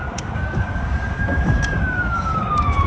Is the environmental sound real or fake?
fake